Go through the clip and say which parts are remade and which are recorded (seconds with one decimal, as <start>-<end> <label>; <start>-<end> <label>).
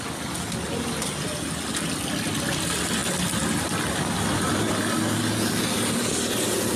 0.0-6.8 recorded